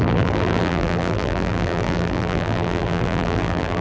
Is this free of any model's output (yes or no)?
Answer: no